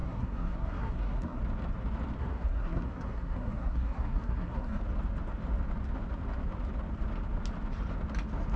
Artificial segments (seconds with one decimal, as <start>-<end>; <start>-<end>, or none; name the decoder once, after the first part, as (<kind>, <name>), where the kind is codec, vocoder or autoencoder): 0.0-1.4 (codec, SNAC); 2.2-4.8

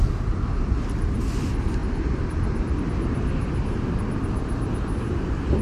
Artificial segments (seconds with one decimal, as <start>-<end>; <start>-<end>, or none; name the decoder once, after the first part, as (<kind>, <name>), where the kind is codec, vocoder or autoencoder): none

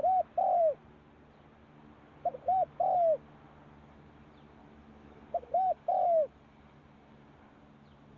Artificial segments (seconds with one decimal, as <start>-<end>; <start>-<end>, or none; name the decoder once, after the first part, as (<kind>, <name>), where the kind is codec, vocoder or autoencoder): 4.6-5.5 (autoencoder, DAC-VAE)

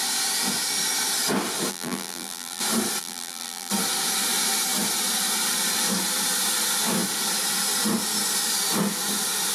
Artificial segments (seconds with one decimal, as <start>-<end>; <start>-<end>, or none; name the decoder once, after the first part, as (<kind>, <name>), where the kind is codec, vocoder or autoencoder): 1.7-2.6 (vocoder, BigVGAN v2); 3.0-3.7

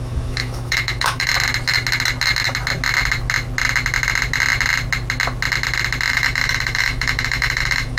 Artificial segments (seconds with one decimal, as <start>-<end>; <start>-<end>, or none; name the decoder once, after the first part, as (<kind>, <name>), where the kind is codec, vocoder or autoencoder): 0.0-1.3 (autoencoder, DAC-VAE); 6.1-8.0

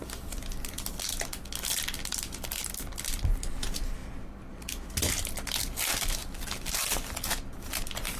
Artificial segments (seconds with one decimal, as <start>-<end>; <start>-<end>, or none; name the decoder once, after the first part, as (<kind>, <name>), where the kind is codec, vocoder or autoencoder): none

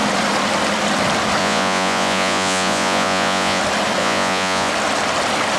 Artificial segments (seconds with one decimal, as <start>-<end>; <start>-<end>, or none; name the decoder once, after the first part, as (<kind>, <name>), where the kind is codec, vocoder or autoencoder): 1.4-3.6 (vocoder, Vocos); 4.0-4.7

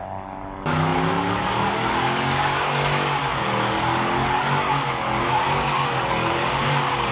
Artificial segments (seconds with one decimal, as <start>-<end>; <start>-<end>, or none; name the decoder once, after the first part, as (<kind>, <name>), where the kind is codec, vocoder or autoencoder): 0.0-7.1 (codec, DAC)